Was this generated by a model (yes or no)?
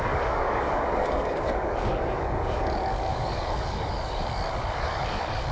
yes